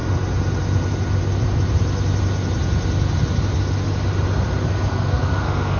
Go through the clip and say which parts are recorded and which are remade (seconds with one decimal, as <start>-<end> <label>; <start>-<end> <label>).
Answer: 0.0-4.6 recorded; 4.6-5.8 remade